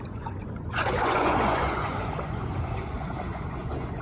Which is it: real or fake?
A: fake